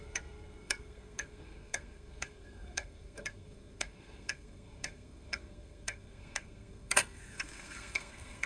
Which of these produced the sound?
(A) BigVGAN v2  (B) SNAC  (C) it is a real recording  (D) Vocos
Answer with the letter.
B